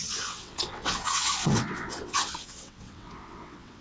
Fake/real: fake